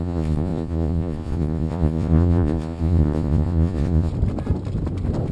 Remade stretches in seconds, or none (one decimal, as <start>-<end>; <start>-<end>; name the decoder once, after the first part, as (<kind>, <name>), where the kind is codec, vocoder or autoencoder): 0.0-4.1 (vocoder, Vocos)